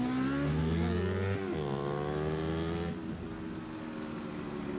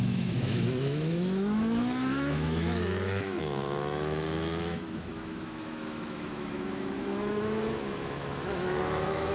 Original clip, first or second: first